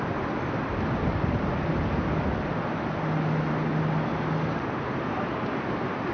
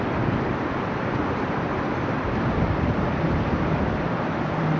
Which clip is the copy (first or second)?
second